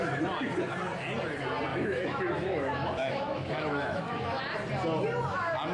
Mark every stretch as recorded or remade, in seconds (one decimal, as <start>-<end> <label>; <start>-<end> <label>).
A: 0.0-1.7 recorded; 1.7-4.4 remade; 4.4-5.7 recorded